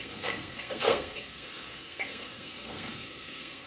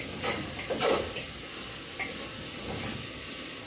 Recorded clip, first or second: second